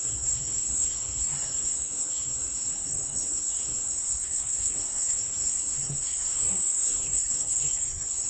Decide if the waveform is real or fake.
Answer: fake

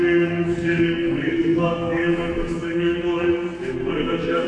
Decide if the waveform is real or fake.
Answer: fake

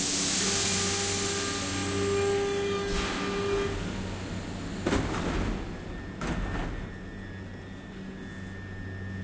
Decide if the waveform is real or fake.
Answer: real